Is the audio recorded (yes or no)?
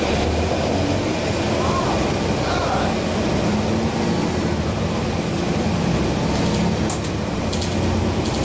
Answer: yes